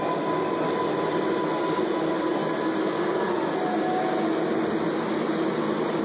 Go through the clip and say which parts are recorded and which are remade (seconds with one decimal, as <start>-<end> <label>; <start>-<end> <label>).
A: 0.0-6.0 recorded